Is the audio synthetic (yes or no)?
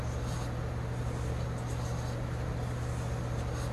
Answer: no